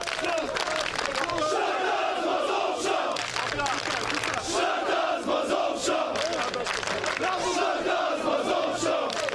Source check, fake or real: real